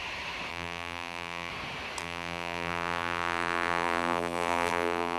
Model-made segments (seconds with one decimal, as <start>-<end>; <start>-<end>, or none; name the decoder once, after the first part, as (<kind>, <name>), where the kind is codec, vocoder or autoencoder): 0.5-1.5 (vocoder, BigVGAN v2); 2.0-5.2